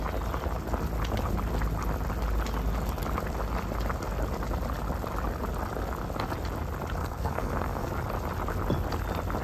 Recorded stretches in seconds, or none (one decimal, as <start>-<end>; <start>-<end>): 0.0-7.0; 7.9-9.4